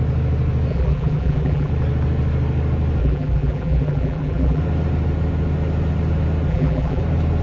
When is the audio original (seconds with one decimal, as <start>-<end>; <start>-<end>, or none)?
0.0-0.7; 1.7-3.0; 4.6-6.5; 7.0-7.4